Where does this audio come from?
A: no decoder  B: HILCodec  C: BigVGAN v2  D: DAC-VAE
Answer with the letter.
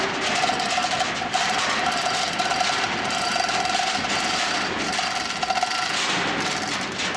A